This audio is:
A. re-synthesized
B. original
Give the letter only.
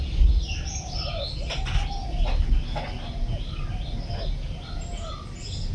B